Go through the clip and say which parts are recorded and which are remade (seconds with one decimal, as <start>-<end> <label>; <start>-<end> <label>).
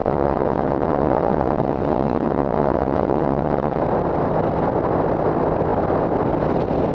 0.0-3.8 remade; 3.8-6.9 recorded